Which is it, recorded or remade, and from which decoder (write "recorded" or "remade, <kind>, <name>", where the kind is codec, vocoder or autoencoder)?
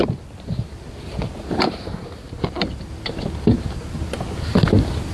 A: recorded